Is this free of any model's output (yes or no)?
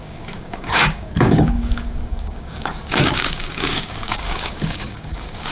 no